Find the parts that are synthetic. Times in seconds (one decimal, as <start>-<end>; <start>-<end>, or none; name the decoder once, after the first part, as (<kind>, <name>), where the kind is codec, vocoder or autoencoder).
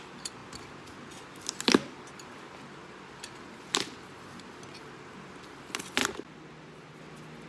none